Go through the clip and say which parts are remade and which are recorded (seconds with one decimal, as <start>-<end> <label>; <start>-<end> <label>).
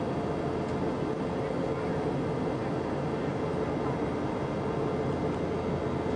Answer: 0.0-6.2 recorded